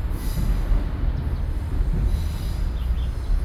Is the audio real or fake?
real